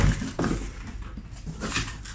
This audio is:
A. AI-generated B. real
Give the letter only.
B